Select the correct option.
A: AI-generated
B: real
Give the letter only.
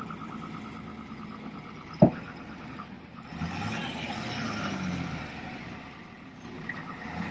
B